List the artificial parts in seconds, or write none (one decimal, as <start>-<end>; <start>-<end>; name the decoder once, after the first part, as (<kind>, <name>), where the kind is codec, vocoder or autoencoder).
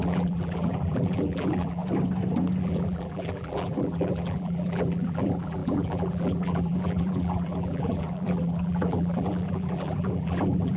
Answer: 0.0-1.8 (vocoder, BigVGAN v2); 2.6-10.8